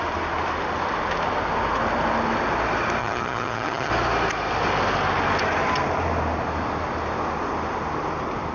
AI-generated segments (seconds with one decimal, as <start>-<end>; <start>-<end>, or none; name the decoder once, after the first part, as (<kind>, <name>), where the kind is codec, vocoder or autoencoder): 3.0-3.9 (vocoder, HiFi-GAN)